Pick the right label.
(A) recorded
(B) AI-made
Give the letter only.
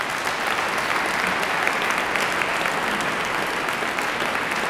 A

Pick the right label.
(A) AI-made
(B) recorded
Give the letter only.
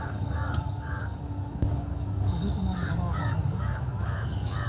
A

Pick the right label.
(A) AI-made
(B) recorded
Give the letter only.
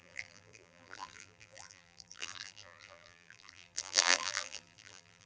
A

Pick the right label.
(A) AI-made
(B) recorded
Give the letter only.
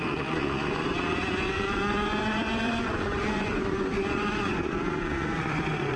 A